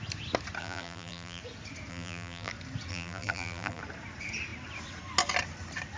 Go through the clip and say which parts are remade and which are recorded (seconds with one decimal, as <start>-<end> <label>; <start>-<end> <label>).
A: 0.0-0.6 recorded; 0.6-1.4 remade; 1.4-1.9 recorded; 1.9-2.5 remade; 2.5-2.9 recorded; 2.9-3.8 remade; 3.8-6.0 recorded